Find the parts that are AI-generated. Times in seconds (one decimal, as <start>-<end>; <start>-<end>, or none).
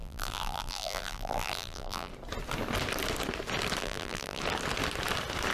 0.0-2.1; 3.8-4.4